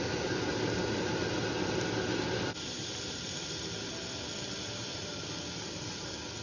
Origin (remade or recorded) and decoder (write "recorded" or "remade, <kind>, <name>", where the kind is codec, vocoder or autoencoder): recorded